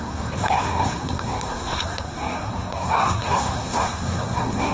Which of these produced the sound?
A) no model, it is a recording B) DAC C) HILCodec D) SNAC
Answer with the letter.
D